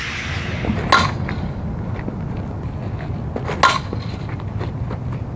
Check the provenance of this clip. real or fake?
real